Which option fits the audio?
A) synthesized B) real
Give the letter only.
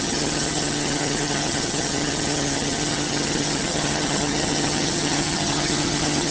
A